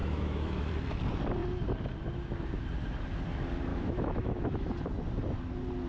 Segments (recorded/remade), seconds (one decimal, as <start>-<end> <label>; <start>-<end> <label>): 0.0-0.7 remade; 0.7-3.7 recorded; 3.7-4.7 remade; 4.7-5.9 recorded